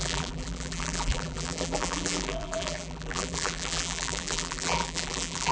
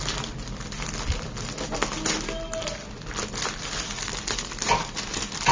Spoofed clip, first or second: first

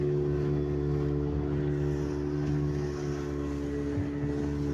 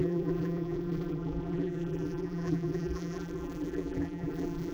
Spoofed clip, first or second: second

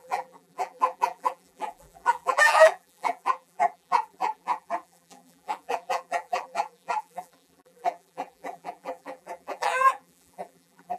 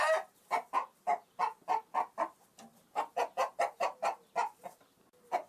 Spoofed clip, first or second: first